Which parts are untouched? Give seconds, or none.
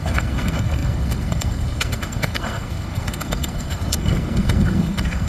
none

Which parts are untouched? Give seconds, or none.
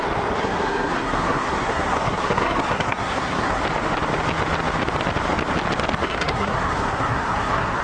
0.0-0.4; 3.6-6.0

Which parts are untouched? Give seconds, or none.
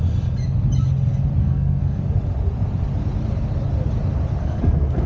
0.0-1.4; 2.0-4.4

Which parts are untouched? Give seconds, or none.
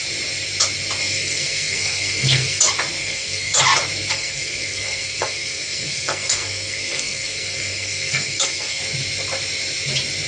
0.0-1.0; 2.6-3.0; 3.6-4.1; 8.8-10.3